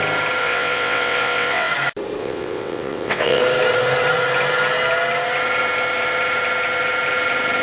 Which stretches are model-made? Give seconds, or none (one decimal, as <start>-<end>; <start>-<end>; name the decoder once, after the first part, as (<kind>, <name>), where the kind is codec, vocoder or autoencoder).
0.4-1.7 (vocoder, WaveNeXt); 2.2-3.4